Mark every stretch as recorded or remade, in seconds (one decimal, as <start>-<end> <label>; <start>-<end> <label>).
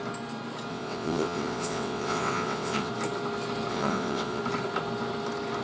0.0-0.7 recorded; 0.7-2.9 remade; 2.9-3.7 recorded; 3.7-4.4 remade; 4.4-5.6 recorded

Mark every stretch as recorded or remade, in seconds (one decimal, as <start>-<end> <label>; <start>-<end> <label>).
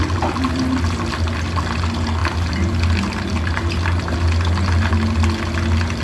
0.0-6.0 recorded